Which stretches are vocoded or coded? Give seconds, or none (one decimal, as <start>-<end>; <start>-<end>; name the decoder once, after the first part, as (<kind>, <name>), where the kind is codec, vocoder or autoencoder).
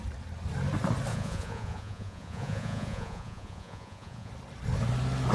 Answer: 1.1-4.3 (vocoder, Vocos)